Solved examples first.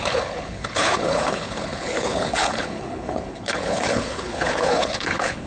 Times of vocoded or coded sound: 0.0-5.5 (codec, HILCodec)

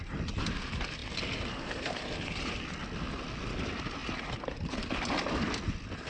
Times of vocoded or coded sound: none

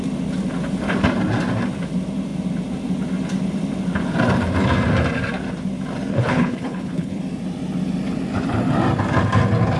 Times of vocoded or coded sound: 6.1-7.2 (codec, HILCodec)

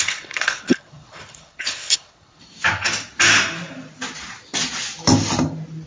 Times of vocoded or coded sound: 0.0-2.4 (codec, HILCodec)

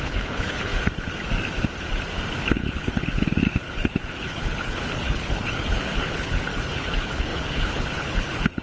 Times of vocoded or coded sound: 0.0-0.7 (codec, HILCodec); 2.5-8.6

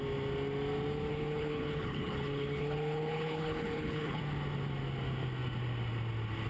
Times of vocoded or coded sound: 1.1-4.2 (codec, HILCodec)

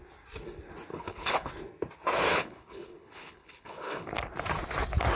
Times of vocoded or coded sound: 0.9-1.5 (codec, HILCodec); 2.3-4.1